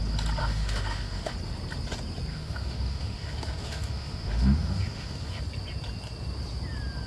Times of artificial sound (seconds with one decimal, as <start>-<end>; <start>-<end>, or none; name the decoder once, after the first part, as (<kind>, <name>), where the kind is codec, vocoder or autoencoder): 0.4-1.3 (autoencoder, DAC-VAE); 2.3-5.4

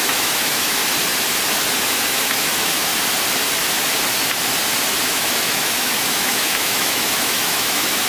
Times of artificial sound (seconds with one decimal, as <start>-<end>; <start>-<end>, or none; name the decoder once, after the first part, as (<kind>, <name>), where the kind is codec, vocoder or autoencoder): 0.0-0.8 (autoencoder, DAC-VAE); 1.8-2.9; 5.0-8.1

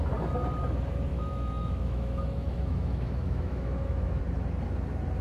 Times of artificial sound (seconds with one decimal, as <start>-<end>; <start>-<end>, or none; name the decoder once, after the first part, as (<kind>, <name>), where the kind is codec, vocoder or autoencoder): 1.1-4.2 (autoencoder, DAC-VAE)